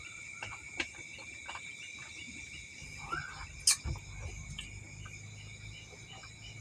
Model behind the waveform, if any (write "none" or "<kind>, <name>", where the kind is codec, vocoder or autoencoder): none